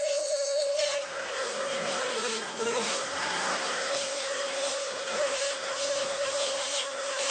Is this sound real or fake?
fake